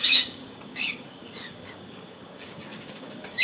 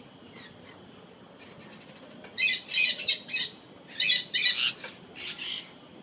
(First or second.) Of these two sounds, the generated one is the first